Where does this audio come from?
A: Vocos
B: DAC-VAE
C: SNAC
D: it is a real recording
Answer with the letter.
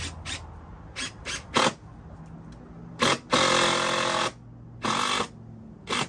D